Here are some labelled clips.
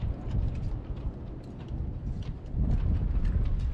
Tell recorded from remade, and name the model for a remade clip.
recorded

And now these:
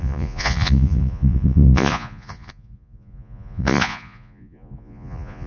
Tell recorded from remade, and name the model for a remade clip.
remade, vocoder, Vocos